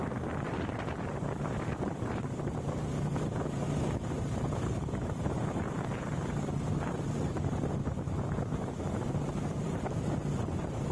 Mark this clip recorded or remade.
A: remade